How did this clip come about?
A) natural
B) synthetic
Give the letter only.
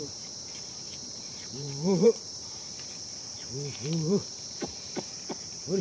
B